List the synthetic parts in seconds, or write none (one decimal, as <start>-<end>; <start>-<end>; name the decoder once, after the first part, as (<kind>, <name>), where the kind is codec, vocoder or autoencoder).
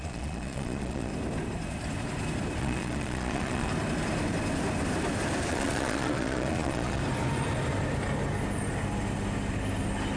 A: 0.0-1.1 (vocoder, Vocos); 2.6-3.7; 5.5-7.0